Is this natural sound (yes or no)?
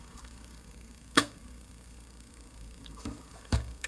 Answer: no